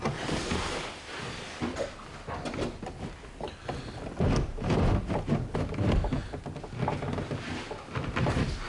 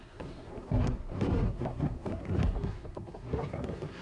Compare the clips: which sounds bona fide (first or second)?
first